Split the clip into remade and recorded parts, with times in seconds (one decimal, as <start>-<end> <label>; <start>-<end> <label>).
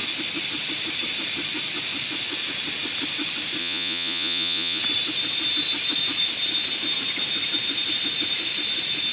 0.0-3.6 recorded; 3.6-4.8 remade; 4.8-9.1 recorded